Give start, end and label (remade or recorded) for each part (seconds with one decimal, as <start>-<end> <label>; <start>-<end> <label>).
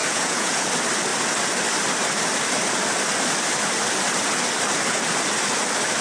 0.0-0.7 remade; 0.7-6.0 recorded